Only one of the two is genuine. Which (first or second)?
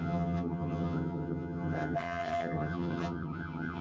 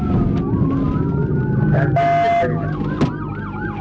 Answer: second